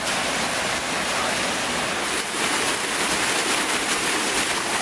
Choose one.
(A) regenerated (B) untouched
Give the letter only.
B